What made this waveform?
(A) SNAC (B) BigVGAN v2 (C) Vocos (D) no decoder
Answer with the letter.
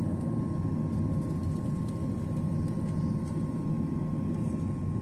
D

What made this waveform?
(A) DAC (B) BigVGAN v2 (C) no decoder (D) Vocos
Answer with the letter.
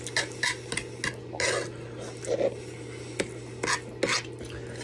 C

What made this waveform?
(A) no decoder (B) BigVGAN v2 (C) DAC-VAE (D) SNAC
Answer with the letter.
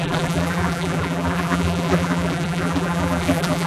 B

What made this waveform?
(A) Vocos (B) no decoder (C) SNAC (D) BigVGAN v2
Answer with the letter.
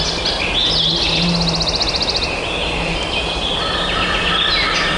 B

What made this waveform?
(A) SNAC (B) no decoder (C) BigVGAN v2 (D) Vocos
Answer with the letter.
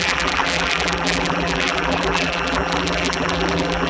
C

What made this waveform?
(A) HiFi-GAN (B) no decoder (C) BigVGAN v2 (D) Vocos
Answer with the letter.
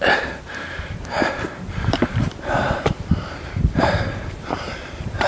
C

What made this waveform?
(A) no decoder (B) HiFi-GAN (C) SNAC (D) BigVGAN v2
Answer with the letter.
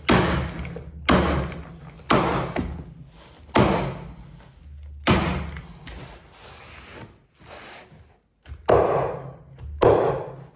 A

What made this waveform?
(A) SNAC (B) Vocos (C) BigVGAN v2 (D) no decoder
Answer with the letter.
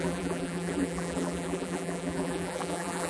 C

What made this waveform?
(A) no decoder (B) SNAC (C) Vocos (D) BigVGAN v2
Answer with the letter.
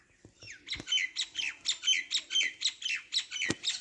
D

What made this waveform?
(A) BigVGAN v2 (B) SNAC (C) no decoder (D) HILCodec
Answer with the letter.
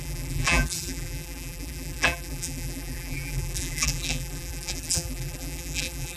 A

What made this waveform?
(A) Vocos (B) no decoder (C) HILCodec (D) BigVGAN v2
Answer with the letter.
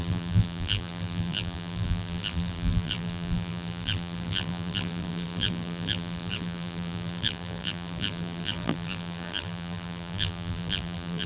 D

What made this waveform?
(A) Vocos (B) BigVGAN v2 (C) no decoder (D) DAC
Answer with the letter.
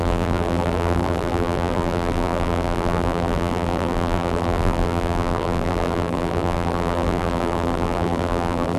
B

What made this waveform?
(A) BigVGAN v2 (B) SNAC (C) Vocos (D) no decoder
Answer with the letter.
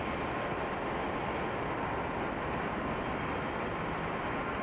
D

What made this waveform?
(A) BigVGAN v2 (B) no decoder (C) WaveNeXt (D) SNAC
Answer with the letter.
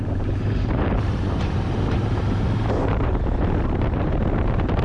A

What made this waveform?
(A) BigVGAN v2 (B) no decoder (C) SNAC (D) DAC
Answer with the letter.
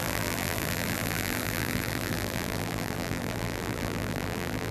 A